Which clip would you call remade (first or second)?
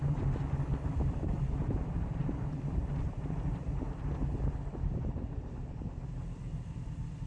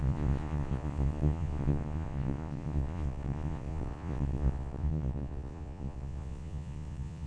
second